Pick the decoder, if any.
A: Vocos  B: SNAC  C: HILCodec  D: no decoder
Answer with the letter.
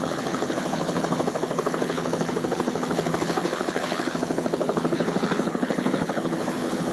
C